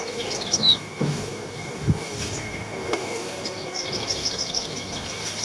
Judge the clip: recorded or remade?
remade